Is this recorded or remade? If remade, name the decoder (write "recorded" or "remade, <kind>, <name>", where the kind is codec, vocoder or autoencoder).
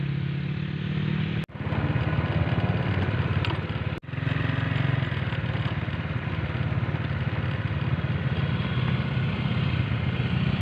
recorded